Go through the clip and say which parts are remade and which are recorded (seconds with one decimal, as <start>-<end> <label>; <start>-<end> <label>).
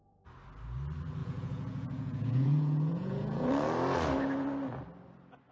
0.0-1.2 recorded; 1.2-3.5 remade; 3.5-5.5 recorded